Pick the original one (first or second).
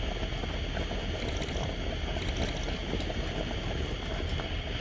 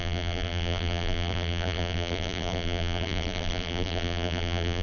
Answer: first